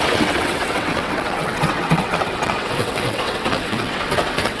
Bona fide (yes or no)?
no